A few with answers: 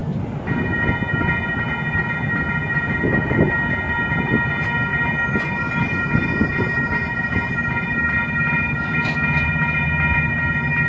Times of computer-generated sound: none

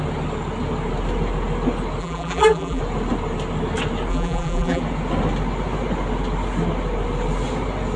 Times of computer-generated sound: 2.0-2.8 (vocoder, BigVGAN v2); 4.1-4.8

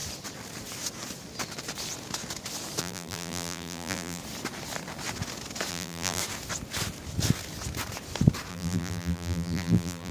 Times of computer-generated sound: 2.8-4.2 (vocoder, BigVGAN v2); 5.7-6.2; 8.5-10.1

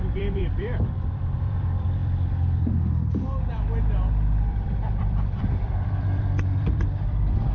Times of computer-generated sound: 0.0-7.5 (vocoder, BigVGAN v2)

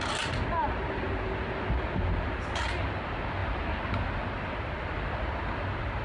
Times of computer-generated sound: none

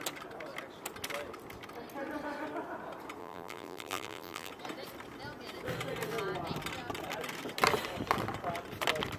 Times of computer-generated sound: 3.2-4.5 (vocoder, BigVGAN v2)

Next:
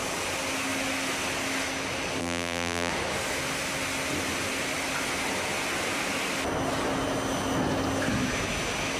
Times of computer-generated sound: 2.2-2.9 (vocoder, BigVGAN v2)